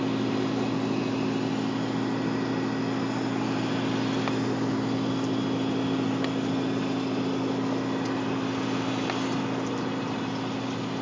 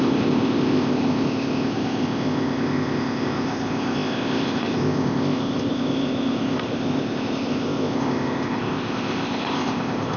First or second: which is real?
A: first